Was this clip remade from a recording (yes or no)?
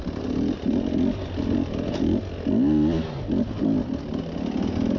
no